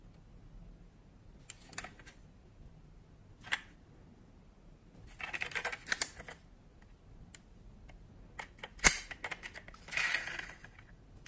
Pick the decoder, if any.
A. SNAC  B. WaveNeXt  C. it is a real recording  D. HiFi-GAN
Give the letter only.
C